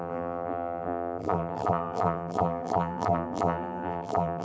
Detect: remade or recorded remade